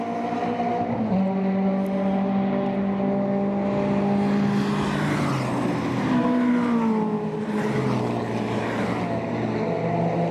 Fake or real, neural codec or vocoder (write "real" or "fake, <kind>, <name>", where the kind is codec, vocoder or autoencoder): real